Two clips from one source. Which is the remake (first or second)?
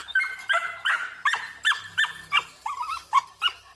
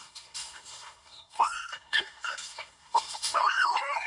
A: second